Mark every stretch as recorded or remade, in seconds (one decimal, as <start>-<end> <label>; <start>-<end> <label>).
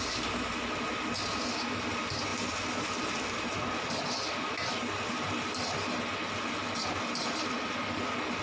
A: 0.0-8.4 recorded